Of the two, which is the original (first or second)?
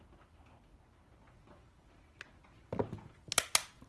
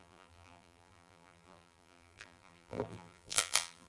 first